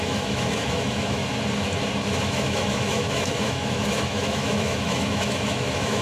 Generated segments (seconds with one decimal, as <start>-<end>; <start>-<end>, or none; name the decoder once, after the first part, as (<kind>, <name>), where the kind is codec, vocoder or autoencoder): 0.0-1.2 (autoencoder, DAC-VAE); 2.3-6.0